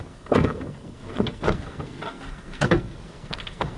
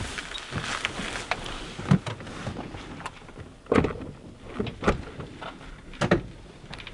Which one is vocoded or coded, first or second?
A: first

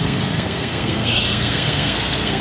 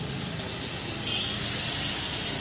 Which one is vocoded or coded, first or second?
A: first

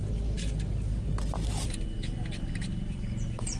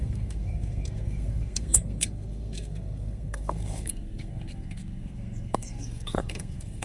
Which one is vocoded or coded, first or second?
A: second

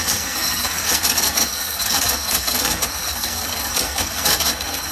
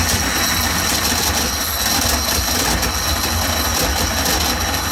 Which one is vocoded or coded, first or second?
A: first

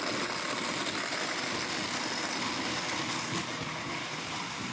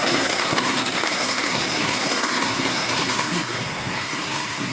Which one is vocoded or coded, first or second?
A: second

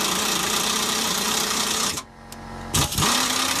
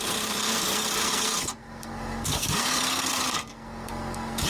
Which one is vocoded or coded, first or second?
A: second